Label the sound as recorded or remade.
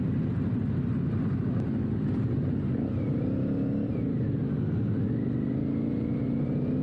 recorded